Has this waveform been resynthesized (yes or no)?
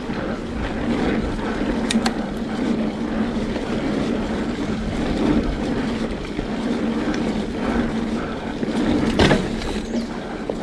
no